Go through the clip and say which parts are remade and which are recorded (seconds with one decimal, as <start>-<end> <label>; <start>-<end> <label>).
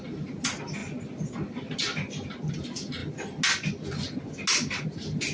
0.0-5.3 recorded